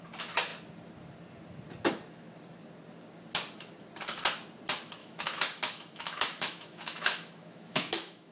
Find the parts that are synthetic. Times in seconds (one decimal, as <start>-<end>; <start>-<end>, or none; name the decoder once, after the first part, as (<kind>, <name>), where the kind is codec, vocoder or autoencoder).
5.0-8.3 (autoencoder, DAC-VAE)